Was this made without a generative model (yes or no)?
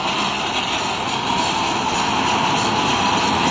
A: yes